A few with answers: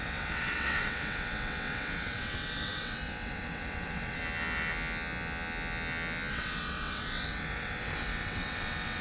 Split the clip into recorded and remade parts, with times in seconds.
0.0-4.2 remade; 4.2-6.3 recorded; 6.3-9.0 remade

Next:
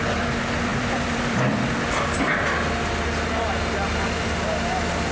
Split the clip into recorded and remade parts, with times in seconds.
0.0-0.7 recorded; 0.7-2.0 remade; 2.0-5.1 recorded

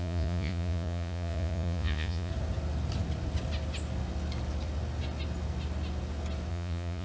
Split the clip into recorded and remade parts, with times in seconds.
0.0-2.3 remade; 2.3-6.5 recorded; 6.5-7.0 remade

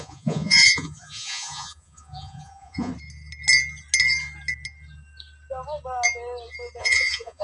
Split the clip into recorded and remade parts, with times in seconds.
0.0-2.9 remade; 2.9-6.8 recorded; 6.8-7.4 remade